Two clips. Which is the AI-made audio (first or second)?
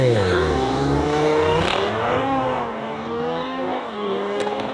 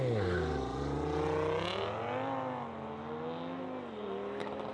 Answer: first